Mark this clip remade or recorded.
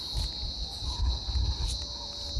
recorded